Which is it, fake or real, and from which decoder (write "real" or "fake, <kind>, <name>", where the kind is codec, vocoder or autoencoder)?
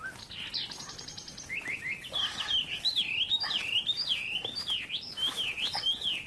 real